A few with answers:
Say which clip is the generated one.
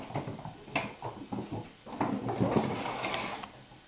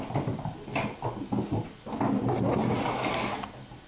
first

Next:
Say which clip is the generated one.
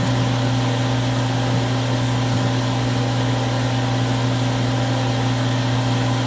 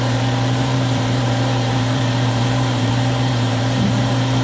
second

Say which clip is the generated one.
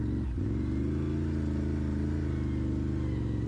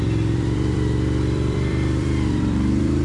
second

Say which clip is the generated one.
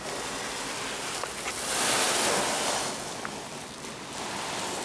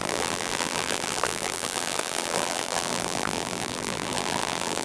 second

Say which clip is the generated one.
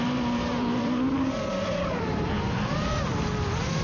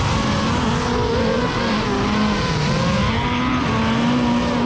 first